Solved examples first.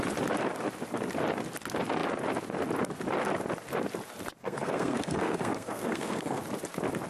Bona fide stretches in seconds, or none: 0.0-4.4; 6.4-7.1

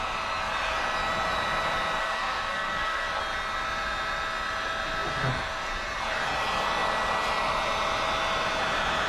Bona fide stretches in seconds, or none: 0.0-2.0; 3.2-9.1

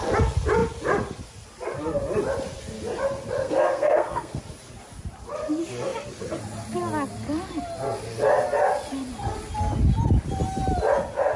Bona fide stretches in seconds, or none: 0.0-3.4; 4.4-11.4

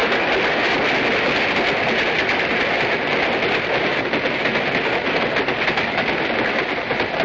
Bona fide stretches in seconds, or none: 0.0-7.2

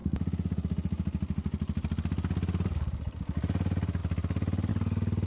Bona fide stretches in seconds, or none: 0.0-5.3

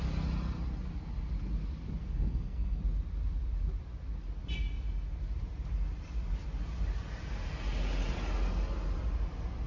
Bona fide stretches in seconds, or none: 0.0-2.0; 2.8-9.7

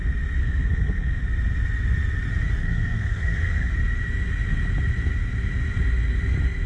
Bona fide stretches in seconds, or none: 0.0-0.4; 1.2-2.6; 3.7-6.7